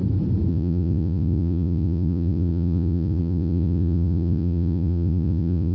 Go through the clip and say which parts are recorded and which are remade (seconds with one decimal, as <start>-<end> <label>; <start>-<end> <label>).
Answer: 0.0-0.5 recorded; 0.5-5.7 remade